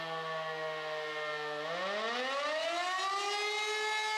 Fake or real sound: real